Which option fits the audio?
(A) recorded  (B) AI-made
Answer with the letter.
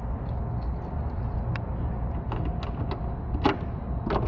A